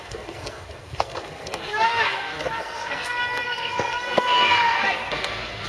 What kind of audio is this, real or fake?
fake